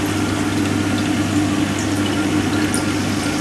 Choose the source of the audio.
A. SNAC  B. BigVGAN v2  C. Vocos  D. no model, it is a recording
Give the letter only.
D